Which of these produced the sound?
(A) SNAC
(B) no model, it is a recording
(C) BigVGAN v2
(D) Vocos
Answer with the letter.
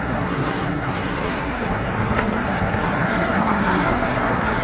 A